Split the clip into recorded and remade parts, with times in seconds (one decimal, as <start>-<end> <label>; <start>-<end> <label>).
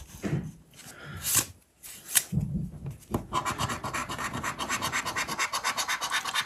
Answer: 0.0-4.0 recorded; 4.0-5.0 remade; 5.0-6.5 recorded